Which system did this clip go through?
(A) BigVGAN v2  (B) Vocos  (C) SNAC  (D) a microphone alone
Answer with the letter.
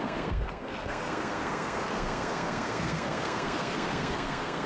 C